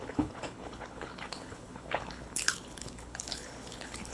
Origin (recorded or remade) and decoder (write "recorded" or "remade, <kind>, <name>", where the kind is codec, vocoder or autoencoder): remade, codec, HILCodec